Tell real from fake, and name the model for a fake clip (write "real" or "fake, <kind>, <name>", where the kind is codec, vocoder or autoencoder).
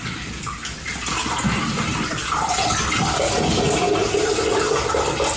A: real